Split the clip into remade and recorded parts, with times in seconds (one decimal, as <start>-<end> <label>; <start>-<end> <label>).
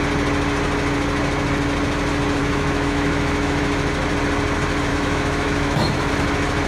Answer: 0.0-2.4 recorded; 2.4-3.6 remade; 3.6-4.9 recorded; 4.9-6.1 remade; 6.1-6.7 recorded